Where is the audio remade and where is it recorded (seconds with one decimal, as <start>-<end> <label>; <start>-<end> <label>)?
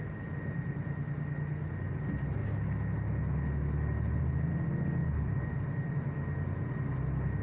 0.0-7.4 recorded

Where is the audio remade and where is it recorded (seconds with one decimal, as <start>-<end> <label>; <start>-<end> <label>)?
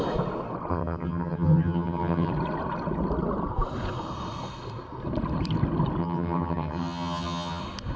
0.0-0.7 recorded; 0.7-2.3 remade; 2.3-6.0 recorded; 6.0-7.6 remade; 7.6-8.0 recorded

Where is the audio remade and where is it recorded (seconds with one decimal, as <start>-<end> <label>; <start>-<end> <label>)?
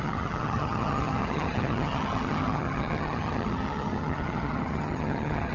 0.0-5.5 remade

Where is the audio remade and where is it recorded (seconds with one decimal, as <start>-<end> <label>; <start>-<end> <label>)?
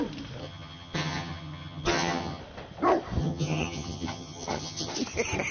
0.0-0.4 recorded; 0.4-2.4 remade; 2.4-3.2 recorded; 3.2-4.9 remade; 4.9-5.5 recorded